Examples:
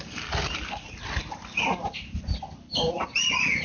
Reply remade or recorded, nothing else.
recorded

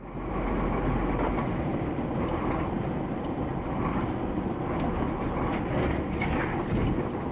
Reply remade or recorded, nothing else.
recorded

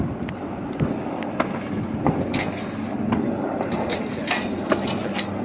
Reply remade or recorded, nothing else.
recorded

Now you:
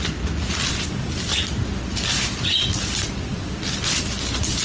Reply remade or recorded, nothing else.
recorded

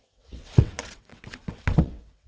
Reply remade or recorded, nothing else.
remade